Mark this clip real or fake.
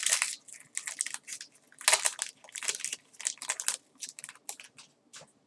real